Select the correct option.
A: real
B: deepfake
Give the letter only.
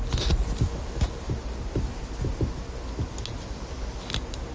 A